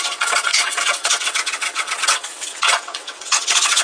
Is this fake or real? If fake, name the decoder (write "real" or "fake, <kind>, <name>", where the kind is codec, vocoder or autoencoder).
fake, vocoder, WaveNeXt